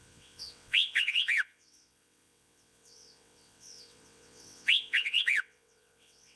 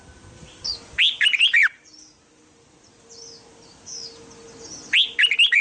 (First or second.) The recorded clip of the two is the second